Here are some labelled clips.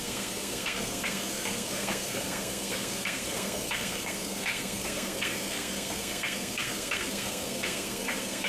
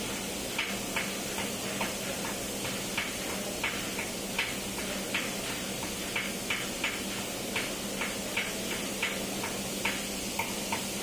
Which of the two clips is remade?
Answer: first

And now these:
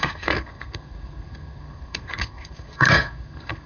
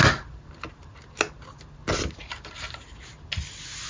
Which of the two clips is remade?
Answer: first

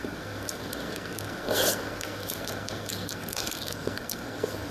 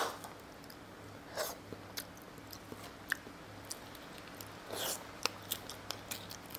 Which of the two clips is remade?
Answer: first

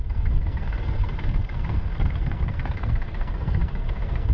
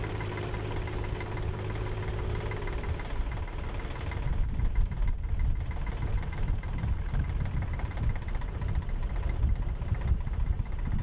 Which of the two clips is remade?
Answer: first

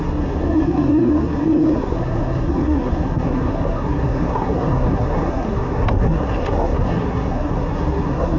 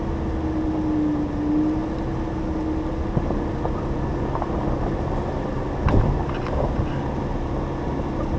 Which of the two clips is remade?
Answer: first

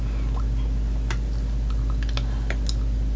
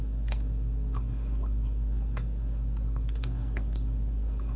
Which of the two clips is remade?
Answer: second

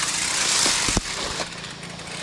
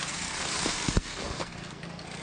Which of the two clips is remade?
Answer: second